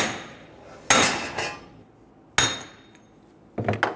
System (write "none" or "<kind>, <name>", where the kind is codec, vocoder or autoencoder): none